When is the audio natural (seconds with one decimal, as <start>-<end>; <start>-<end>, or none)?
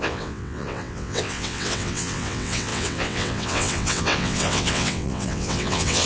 none